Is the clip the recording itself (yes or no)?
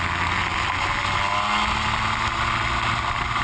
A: yes